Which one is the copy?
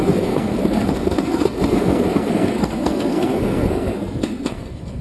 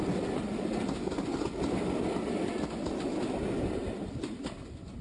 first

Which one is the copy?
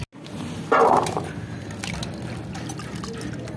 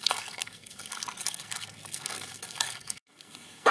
second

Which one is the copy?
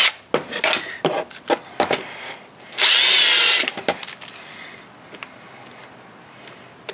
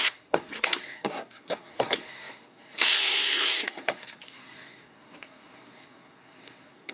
second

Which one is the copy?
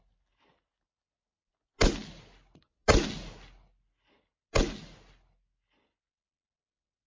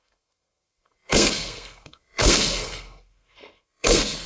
second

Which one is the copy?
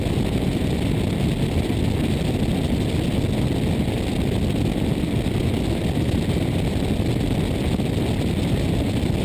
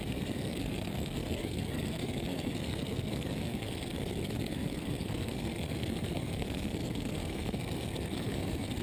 second